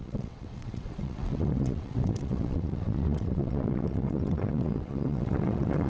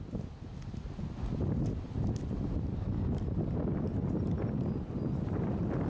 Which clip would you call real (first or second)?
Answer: second